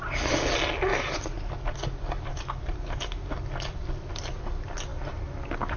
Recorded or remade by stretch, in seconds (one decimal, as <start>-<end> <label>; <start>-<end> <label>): 0.0-5.8 recorded